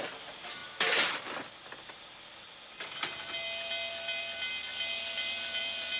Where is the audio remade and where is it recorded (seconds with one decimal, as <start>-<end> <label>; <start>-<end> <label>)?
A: 0.0-6.0 recorded